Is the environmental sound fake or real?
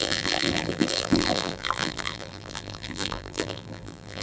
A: fake